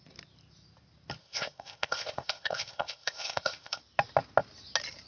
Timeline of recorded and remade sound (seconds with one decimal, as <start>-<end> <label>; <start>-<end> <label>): 0.0-1.2 recorded; 1.2-3.8 remade; 3.8-5.1 recorded